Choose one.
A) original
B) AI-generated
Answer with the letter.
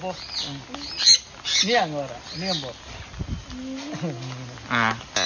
A